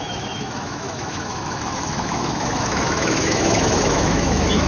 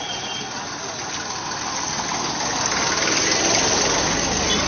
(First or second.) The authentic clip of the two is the second